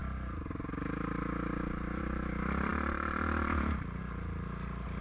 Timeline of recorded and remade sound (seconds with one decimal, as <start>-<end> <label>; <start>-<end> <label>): 0.0-5.0 recorded